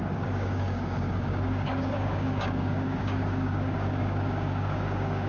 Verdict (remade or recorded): remade